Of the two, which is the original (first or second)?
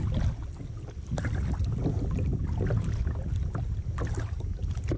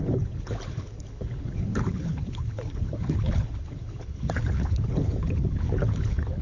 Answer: first